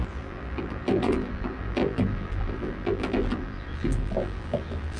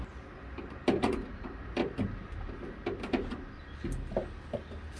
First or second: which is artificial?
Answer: first